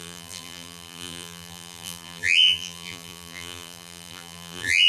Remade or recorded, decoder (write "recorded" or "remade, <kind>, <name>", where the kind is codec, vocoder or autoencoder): remade, vocoder, BigVGAN v2